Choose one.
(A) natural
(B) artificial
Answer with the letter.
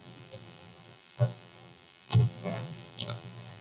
B